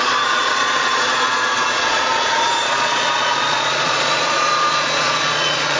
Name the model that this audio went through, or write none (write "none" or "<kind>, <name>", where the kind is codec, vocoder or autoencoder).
vocoder, Vocos